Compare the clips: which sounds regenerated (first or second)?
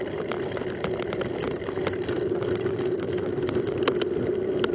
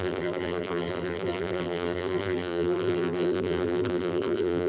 second